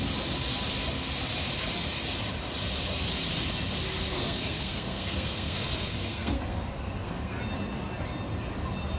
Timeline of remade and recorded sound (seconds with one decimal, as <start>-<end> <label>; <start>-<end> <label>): 0.0-4.1 recorded; 4.1-7.4 remade; 7.4-9.0 recorded